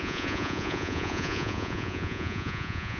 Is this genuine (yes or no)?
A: no